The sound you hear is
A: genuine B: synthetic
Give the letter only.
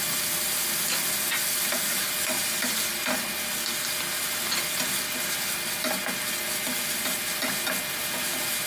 A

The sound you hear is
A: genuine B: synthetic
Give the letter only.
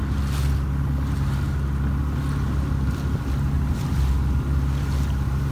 A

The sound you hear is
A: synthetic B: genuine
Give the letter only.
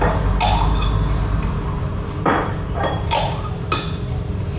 B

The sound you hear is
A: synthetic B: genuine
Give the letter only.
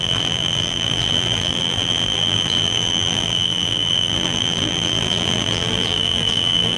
A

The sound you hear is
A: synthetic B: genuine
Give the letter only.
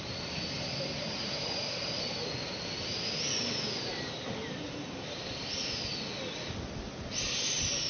B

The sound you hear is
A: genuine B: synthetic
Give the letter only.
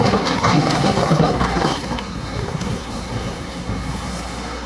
B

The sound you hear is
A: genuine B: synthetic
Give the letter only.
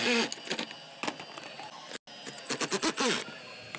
A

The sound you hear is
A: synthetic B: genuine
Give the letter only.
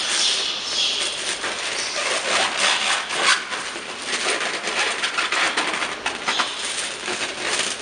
B